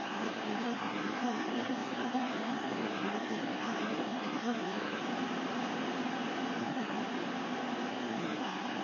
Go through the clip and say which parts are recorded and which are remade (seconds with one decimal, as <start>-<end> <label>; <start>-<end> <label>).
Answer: 0.0-5.0 remade; 5.0-6.6 recorded; 6.6-7.0 remade; 7.0-7.9 recorded; 7.9-8.8 remade